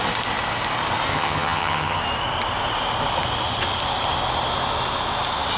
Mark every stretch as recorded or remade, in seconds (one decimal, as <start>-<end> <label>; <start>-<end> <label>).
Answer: 0.0-1.1 recorded; 1.1-2.0 remade; 2.0-5.6 recorded